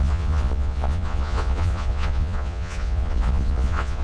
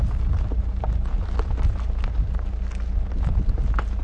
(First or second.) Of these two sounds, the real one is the second